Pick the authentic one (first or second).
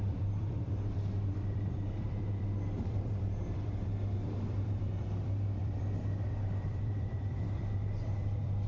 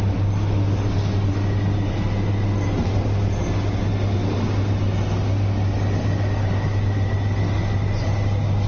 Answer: second